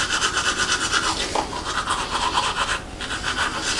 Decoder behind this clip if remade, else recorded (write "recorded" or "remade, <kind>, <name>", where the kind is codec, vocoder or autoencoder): recorded